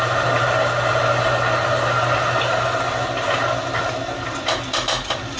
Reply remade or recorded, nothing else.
recorded